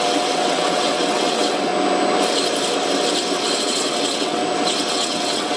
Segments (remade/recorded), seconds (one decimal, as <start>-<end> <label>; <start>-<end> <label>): 0.0-1.7 remade; 1.7-3.6 recorded; 3.6-4.4 remade; 4.4-4.9 recorded; 4.9-5.6 remade